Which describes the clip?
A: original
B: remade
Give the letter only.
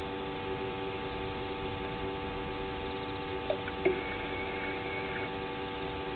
A